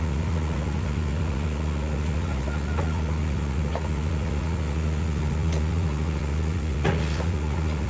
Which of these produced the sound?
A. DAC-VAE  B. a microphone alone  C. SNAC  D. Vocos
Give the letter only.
D